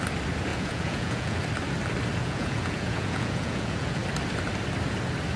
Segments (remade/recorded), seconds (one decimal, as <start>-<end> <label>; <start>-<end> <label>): 0.0-0.5 recorded; 0.5-1.4 remade; 1.4-2.2 recorded; 2.2-4.0 remade; 4.0-5.4 recorded